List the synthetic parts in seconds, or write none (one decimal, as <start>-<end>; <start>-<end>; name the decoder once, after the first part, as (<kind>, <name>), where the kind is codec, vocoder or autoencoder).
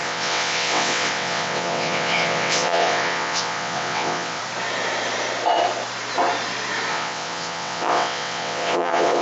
0.0-4.4 (vocoder, WaveNeXt); 6.9-9.2